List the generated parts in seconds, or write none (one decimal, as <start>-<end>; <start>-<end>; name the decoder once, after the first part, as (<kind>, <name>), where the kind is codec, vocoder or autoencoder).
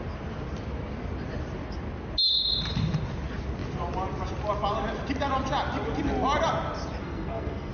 7.0-7.7 (codec, SNAC)